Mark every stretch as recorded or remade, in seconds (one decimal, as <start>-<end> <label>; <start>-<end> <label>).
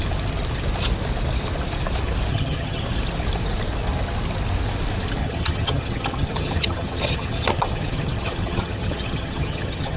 0.0-2.3 recorded; 2.3-2.8 remade; 2.8-5.2 recorded; 5.2-10.0 remade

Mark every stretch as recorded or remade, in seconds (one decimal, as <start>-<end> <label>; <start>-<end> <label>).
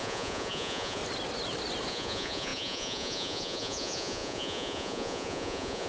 0.0-1.0 remade; 1.0-1.9 recorded; 1.9-5.9 remade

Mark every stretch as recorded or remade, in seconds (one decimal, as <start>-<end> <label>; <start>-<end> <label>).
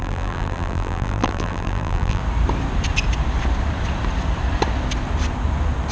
0.0-2.2 remade; 2.2-5.9 recorded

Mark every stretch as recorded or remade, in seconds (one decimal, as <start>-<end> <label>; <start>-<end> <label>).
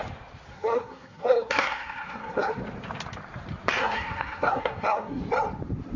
0.0-0.5 recorded; 0.5-2.5 remade; 2.5-3.8 recorded; 3.8-5.2 remade; 5.2-6.0 recorded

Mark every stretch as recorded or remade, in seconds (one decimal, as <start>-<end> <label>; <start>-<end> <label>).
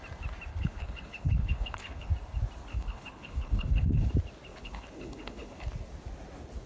0.0-0.5 recorded; 0.5-2.1 remade; 2.1-2.7 recorded; 2.7-4.1 remade; 4.1-4.5 recorded; 4.5-5.7 remade; 5.7-6.7 recorded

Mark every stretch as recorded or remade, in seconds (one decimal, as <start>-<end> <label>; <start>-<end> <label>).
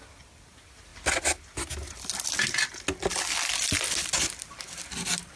0.0-5.4 recorded